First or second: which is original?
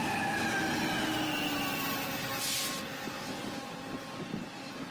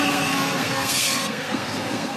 first